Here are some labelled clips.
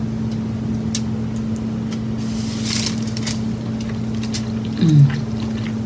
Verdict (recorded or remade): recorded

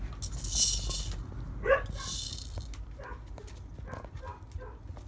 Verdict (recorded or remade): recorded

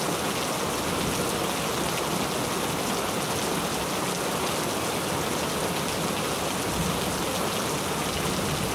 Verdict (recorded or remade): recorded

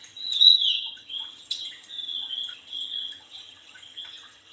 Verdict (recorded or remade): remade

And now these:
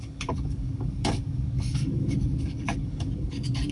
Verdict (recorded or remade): remade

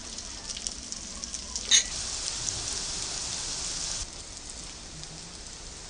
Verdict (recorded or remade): recorded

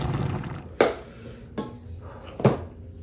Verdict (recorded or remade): recorded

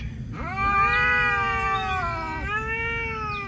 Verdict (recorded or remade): recorded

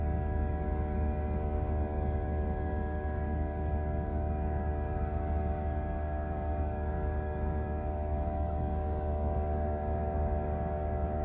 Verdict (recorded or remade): remade